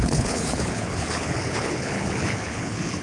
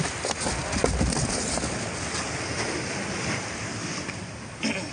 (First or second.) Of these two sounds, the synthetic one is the first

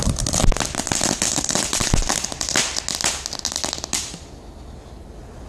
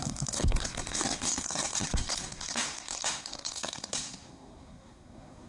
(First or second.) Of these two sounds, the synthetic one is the second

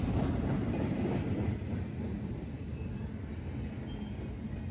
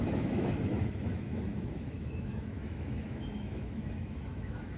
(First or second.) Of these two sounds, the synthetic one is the second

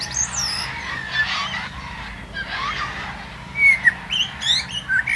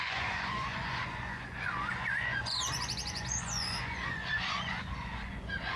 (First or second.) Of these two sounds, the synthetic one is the second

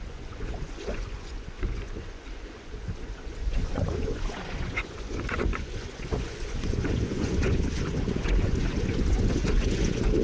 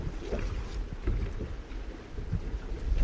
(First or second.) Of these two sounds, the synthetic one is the first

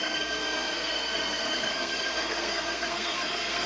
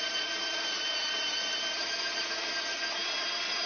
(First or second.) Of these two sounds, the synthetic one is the first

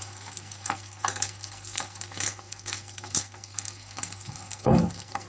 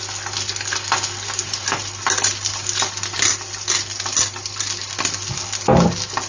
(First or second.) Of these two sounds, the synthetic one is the first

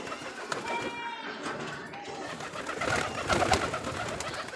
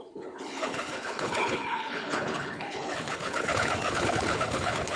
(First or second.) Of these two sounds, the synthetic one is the second